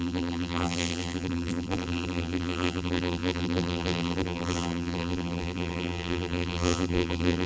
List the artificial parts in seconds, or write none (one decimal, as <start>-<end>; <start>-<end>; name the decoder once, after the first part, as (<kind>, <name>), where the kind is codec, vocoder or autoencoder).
0.0-7.5 (vocoder, BigVGAN v2)